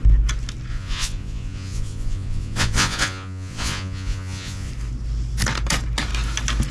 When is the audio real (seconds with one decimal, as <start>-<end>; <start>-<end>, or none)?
0.0-0.7; 4.7-6.7